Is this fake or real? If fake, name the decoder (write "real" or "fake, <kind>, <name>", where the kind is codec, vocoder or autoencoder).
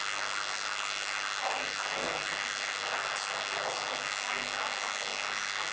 real